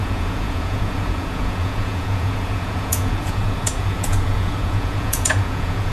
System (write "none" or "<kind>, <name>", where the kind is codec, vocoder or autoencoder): vocoder, Vocos